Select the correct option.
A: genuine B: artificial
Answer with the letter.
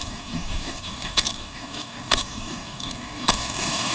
B